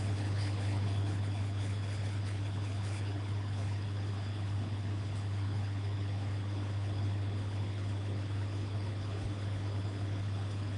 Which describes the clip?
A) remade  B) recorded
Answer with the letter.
A